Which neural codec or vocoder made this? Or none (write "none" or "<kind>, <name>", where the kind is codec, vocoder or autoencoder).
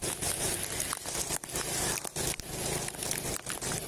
none